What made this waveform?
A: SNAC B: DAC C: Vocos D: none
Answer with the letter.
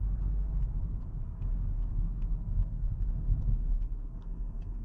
A